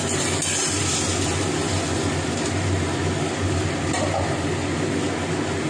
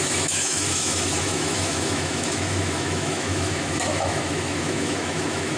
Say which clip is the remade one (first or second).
second